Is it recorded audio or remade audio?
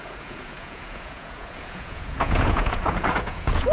remade